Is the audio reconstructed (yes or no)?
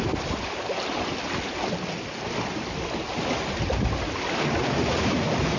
no